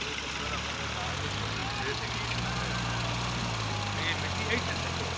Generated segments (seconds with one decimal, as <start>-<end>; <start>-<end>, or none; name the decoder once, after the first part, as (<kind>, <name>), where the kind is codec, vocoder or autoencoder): none